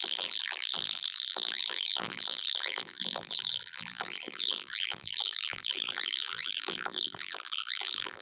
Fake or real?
fake